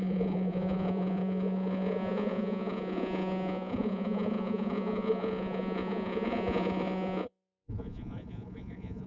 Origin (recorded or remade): remade